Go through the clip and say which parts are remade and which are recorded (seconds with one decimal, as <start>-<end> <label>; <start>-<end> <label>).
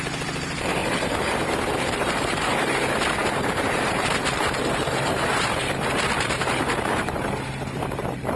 0.0-8.4 remade